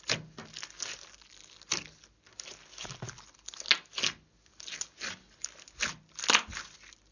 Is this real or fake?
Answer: real